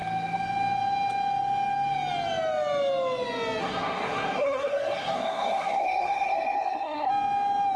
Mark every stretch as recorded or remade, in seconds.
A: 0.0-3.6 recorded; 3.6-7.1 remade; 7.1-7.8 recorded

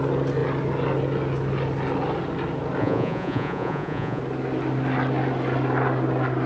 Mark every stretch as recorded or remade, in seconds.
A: 0.0-2.8 recorded; 2.8-4.2 remade; 4.2-6.5 recorded

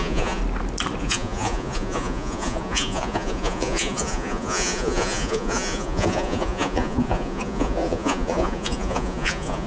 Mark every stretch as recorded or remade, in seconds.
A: 0.0-0.4 remade; 0.4-1.0 recorded; 1.0-9.7 remade